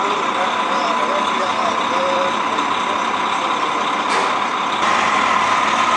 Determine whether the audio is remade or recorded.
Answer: remade